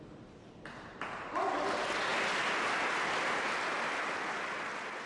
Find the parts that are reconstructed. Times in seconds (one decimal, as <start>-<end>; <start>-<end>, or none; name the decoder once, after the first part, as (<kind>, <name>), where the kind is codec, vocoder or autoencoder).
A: none